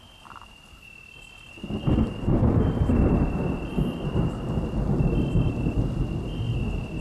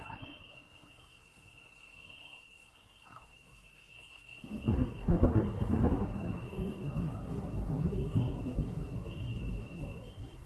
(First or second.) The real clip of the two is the first